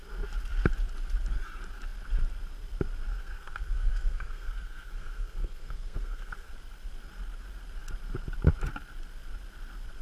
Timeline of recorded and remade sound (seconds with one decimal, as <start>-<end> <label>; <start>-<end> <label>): 0.0-3.1 recorded; 3.1-6.5 remade; 6.5-10.0 recorded